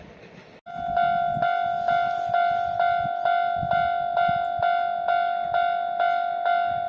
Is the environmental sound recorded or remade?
recorded